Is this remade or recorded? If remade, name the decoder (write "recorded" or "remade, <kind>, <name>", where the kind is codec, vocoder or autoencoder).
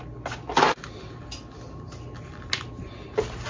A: recorded